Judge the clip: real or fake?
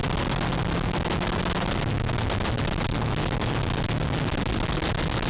real